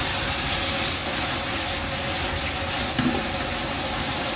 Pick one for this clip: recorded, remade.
recorded